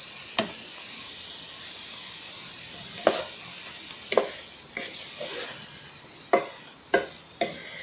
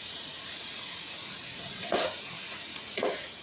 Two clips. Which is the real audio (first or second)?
first